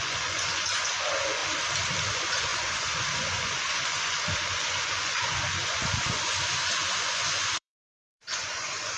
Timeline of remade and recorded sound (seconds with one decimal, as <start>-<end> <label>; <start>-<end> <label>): 0.0-1.4 remade; 1.4-2.1 recorded; 2.1-9.0 remade